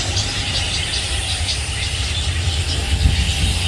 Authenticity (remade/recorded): recorded